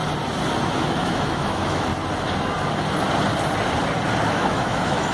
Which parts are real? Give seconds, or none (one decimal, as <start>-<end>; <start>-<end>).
0.0-0.7; 1.9-4.3